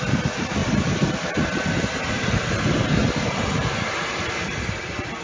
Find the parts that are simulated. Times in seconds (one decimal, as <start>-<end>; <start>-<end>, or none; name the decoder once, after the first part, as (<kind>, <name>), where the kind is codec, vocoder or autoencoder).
none